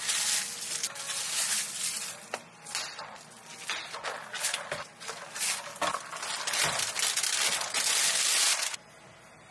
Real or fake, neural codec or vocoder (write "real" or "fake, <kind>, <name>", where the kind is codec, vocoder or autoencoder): real